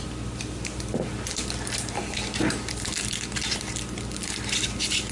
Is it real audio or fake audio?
real